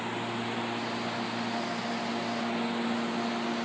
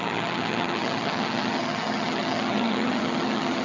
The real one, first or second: first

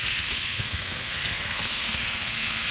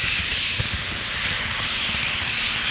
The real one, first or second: second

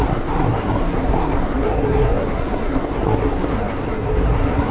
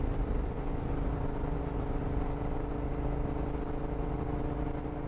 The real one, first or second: second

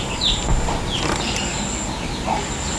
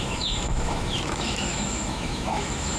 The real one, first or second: first